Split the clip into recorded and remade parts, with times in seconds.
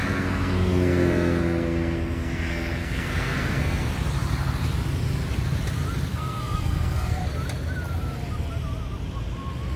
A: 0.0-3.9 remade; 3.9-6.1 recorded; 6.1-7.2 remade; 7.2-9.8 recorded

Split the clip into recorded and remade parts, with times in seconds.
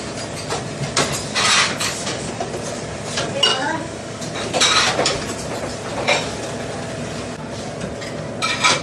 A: 0.0-1.6 recorded; 1.6-2.3 remade; 2.3-3.5 recorded; 3.5-4.2 remade; 4.2-8.8 recorded